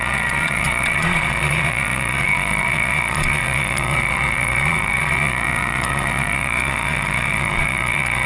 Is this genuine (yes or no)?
no